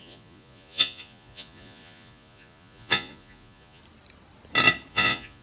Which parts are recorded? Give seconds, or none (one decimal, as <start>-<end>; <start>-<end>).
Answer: 3.8-4.9